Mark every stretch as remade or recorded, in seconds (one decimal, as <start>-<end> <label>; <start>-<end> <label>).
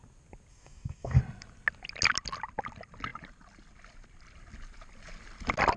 0.0-0.5 recorded; 0.5-1.2 remade; 1.2-5.8 recorded